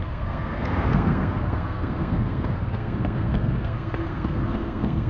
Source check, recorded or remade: remade